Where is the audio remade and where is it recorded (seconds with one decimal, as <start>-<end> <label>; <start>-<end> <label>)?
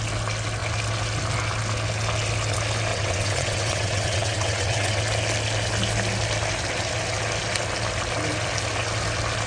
0.0-2.9 recorded; 2.9-5.0 remade; 5.0-9.5 recorded